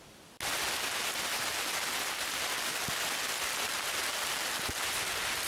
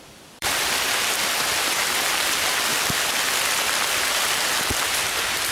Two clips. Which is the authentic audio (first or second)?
first